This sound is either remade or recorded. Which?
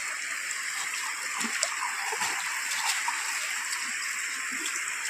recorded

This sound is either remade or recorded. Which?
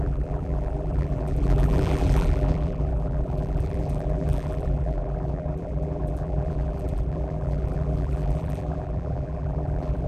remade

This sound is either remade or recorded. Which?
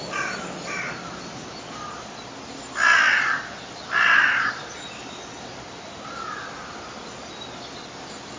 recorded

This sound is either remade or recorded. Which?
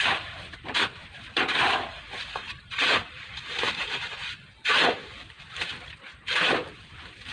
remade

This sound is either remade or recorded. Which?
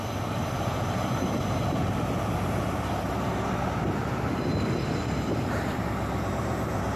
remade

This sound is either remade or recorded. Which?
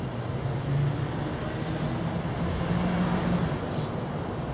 recorded